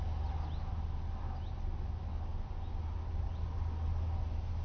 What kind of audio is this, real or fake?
real